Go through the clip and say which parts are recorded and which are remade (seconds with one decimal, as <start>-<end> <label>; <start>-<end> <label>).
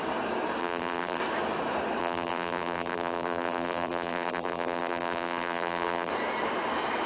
0.0-0.6 recorded; 0.6-1.2 remade; 1.2-2.0 recorded; 2.0-6.1 remade; 6.1-7.1 recorded